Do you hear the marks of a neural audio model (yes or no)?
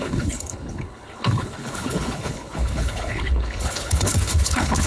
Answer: yes